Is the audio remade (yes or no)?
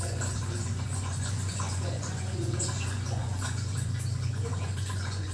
yes